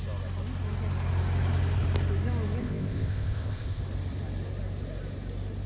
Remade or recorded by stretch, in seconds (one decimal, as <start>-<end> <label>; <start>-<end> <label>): 0.0-2.6 recorded; 2.6-3.8 remade; 3.8-5.7 recorded